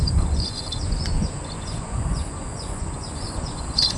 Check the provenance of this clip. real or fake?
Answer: fake